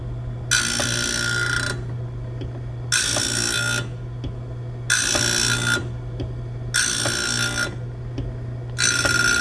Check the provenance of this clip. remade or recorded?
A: recorded